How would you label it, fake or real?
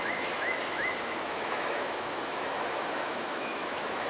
fake